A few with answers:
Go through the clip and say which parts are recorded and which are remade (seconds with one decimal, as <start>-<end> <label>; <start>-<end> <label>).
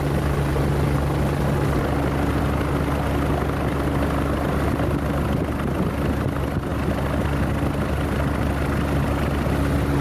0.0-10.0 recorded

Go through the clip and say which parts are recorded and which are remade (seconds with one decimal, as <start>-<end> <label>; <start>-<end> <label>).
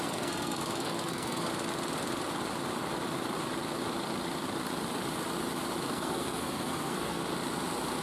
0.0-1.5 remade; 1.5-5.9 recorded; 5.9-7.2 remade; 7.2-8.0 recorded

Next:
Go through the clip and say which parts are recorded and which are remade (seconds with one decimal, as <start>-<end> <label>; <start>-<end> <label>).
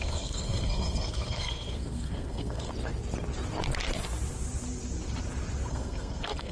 0.0-2.7 remade; 2.7-5.7 recorded; 5.7-6.5 remade